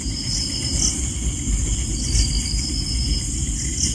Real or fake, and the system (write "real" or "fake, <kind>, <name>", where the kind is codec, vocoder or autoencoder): real